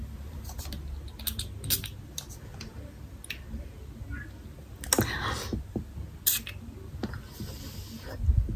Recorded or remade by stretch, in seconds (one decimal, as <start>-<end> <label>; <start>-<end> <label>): 0.0-0.6 remade; 0.6-7.0 recorded; 7.0-7.8 remade; 7.8-8.6 recorded